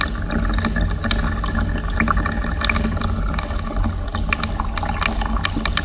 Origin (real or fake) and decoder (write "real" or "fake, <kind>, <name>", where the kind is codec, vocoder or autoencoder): real